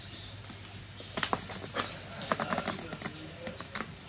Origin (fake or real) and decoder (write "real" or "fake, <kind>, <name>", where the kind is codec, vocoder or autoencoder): real